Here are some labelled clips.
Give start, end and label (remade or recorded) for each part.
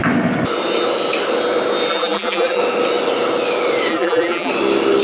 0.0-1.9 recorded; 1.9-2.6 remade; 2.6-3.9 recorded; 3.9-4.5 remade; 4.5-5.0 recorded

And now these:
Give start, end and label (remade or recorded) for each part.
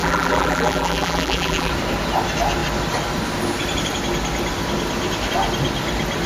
0.0-1.7 remade; 1.7-6.3 recorded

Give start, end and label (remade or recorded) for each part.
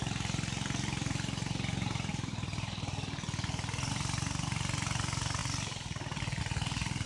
0.0-2.1 recorded; 2.1-3.9 remade; 3.9-5.4 recorded; 5.4-6.4 remade; 6.4-7.1 recorded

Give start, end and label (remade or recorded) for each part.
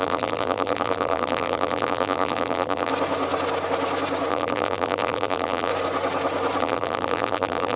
0.0-2.9 remade; 2.9-4.3 recorded; 4.3-5.7 remade; 5.7-6.6 recorded; 6.6-7.8 remade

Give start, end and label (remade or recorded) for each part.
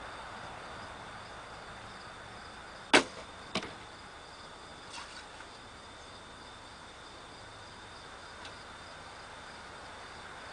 0.0-10.5 recorded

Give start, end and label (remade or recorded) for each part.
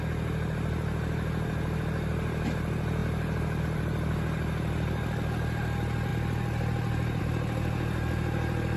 0.0-8.8 recorded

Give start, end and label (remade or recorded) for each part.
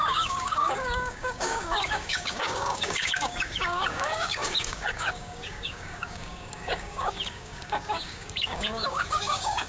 0.0-9.7 remade